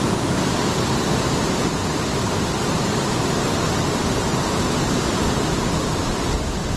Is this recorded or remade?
recorded